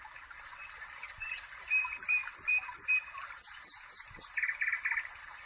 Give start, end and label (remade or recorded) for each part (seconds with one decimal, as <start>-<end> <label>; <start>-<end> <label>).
0.0-5.5 recorded